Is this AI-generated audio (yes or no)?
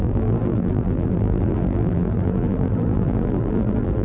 yes